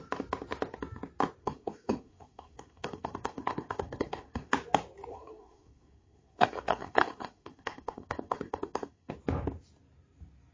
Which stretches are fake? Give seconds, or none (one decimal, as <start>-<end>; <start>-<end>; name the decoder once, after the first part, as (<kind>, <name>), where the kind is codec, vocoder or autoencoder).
1.4-4.5 (codec, SNAC); 5.1-9.1